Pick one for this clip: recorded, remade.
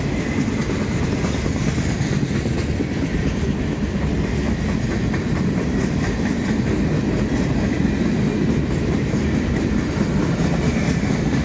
recorded